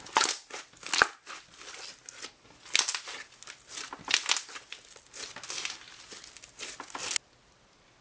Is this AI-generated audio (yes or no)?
no